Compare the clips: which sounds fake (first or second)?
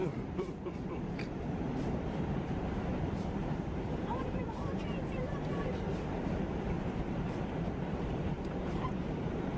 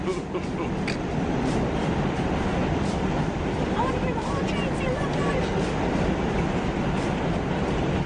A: first